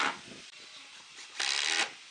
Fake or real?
real